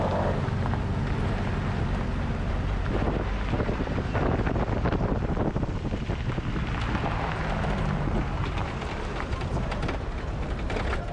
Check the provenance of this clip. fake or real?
real